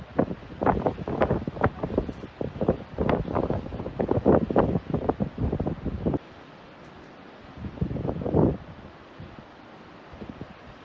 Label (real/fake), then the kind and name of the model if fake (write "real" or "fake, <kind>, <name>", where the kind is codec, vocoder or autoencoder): real